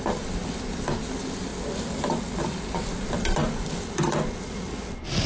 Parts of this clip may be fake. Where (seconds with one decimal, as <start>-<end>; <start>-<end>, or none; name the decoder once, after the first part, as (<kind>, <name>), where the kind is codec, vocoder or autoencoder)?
none